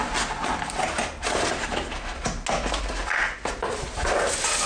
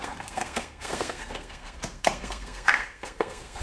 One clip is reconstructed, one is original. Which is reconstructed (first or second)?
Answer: second